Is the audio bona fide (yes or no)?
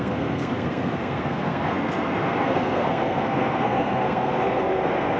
no